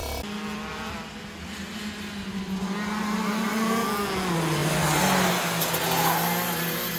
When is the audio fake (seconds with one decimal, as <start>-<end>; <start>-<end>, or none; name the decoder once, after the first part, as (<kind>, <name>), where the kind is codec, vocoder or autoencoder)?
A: none